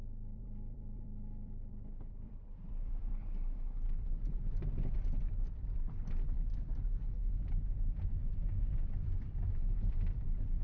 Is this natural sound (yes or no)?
no